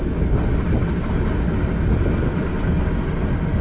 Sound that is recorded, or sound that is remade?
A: recorded